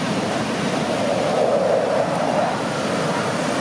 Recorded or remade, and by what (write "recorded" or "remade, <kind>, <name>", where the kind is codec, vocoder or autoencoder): recorded